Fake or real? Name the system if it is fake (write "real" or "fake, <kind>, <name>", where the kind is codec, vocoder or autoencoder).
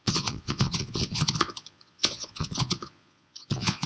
fake, vocoder, Vocos